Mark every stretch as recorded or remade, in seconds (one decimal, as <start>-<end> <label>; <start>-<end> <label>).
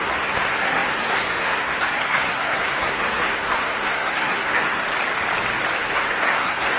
0.0-4.8 remade; 4.8-5.8 recorded; 5.8-6.8 remade